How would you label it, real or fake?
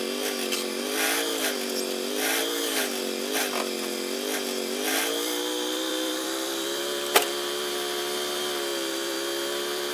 fake